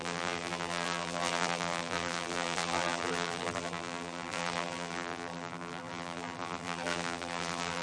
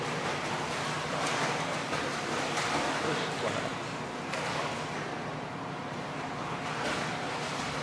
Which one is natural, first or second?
second